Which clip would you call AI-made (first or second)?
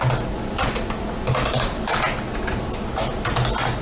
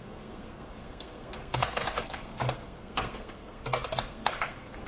second